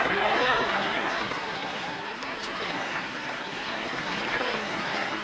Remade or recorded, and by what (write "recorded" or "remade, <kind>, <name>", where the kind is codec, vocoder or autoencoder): remade, codec, SNAC